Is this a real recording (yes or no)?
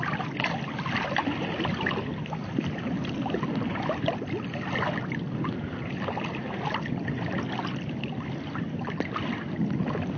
yes